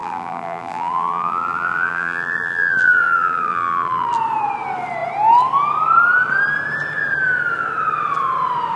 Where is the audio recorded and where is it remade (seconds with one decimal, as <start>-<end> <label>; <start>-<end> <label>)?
0.0-4.1 remade; 4.1-8.8 recorded